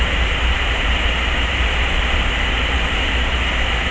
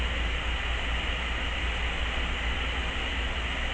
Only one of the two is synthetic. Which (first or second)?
first